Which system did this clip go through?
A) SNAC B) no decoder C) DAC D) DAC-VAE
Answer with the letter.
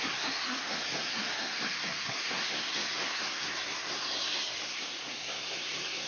A